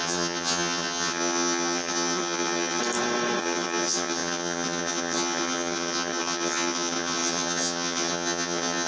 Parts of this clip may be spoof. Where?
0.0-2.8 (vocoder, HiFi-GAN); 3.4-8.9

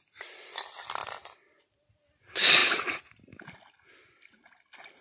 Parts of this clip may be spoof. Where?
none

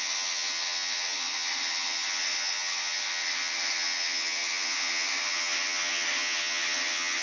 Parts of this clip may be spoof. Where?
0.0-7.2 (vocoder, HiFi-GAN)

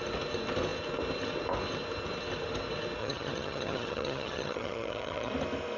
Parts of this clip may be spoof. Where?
3.0-5.3 (vocoder, HiFi-GAN)

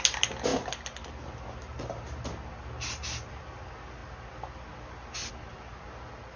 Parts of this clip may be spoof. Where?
none

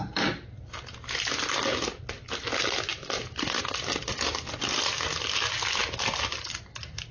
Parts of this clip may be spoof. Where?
none